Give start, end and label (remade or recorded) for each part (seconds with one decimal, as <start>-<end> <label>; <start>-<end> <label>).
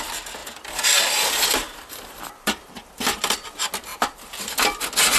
0.0-0.4 recorded; 0.4-3.5 remade; 3.5-3.9 recorded; 3.9-4.5 remade; 4.5-5.2 recorded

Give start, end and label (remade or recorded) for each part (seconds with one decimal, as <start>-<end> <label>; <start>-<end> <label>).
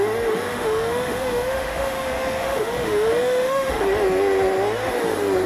0.0-0.5 recorded; 0.5-3.8 remade; 3.8-5.5 recorded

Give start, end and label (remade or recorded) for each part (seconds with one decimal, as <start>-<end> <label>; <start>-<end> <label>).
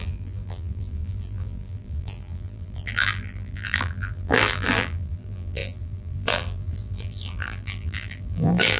0.0-8.8 remade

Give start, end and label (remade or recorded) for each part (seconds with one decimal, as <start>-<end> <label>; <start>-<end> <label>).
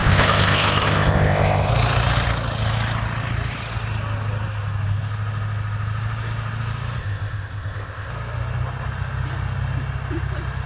0.0-1.7 remade; 1.7-7.0 recorded; 7.0-8.1 remade; 8.1-10.7 recorded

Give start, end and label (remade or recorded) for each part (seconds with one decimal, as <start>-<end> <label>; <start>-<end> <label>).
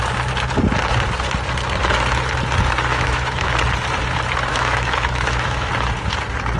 0.0-2.9 recorded; 2.9-3.5 remade; 3.5-4.5 recorded; 4.5-5.7 remade; 5.7-6.6 recorded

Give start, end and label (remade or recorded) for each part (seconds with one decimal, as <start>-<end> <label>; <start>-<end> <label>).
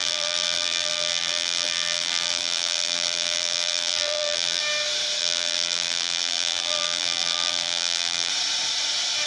0.0-4.6 remade; 4.6-5.2 recorded; 5.2-8.3 remade; 8.3-9.3 recorded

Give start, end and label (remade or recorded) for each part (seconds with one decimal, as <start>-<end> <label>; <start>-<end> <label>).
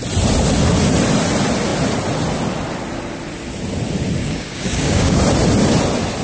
0.0-4.2 recorded; 4.2-5.2 remade; 5.2-6.2 recorded